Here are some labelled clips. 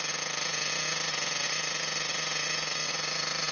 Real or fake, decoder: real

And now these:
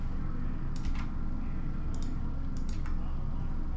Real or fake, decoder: real